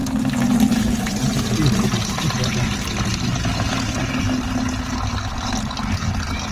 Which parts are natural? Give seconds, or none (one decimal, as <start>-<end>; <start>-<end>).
2.7-6.5